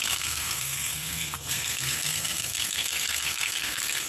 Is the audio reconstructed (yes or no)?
yes